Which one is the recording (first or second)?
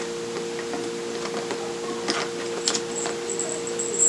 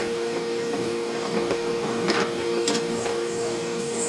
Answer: first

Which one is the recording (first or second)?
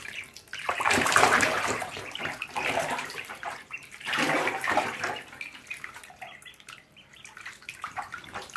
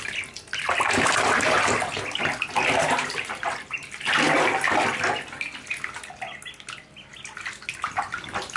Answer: second